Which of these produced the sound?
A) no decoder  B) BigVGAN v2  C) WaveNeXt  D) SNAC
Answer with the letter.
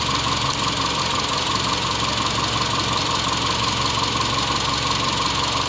A